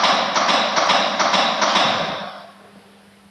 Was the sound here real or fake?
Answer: real